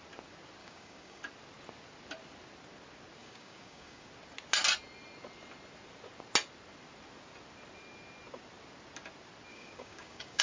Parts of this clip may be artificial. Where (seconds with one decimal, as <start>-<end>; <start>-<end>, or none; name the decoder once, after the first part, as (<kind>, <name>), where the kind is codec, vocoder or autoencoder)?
0.6-1.2 (codec, DAC); 3.2-4.1; 9.5-10.4